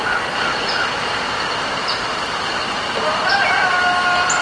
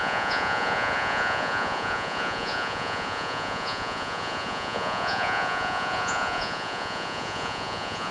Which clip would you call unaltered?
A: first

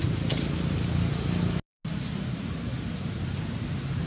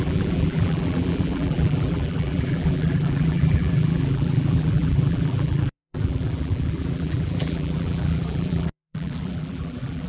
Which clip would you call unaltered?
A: first